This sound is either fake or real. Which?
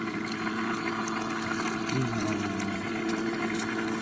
real